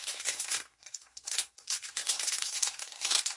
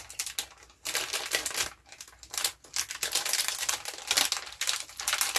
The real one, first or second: second